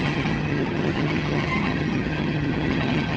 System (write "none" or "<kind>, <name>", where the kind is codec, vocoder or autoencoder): vocoder, HiFi-GAN